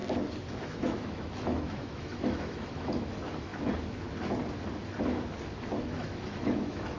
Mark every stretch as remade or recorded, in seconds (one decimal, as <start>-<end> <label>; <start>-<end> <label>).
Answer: 0.0-0.6 recorded; 0.6-3.5 remade; 3.5-5.8 recorded; 5.8-7.0 remade